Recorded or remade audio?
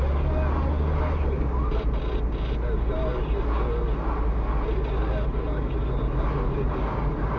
recorded